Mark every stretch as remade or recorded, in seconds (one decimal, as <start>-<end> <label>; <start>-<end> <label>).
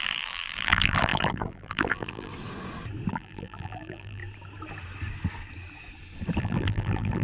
0.0-2.3 remade; 2.3-3.1 recorded; 3.1-4.2 remade; 4.2-6.4 recorded; 6.4-7.2 remade